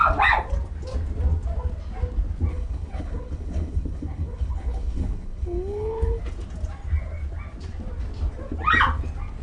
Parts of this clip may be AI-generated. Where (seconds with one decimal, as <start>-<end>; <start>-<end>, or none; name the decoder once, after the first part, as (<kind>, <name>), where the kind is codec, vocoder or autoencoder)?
2.5-6.2 (codec, HILCodec)

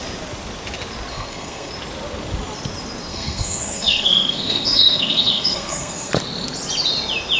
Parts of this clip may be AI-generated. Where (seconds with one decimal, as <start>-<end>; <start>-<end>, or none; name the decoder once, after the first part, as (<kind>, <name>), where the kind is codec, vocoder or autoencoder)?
1.1-1.7 (codec, SNAC); 3.1-6.1

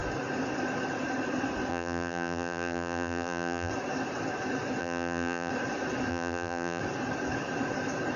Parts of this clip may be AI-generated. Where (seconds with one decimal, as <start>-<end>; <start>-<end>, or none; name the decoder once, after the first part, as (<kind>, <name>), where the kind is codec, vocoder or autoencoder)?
1.7-3.7 (vocoder, BigVGAN v2); 4.8-5.5; 6.1-6.8